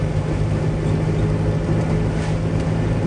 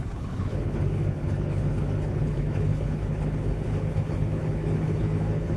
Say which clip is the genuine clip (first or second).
first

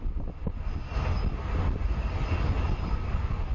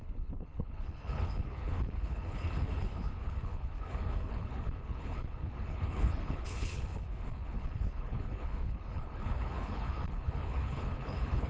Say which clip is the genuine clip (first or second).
first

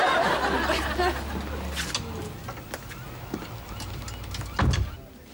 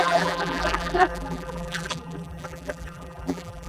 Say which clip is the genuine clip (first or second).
first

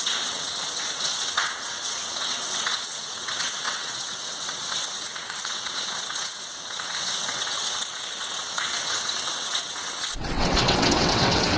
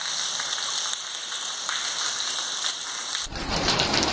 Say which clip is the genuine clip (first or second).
second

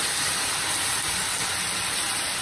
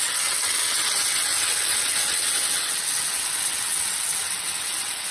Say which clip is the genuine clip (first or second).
first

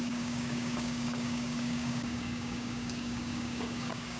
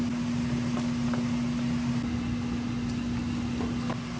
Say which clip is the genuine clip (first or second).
second